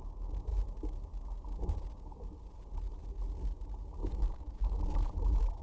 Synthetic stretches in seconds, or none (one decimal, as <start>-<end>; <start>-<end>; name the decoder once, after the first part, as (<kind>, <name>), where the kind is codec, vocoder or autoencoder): 4.0-4.8 (codec, DAC)